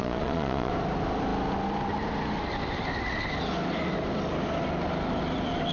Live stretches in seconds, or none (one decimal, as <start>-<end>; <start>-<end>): 0.7-5.7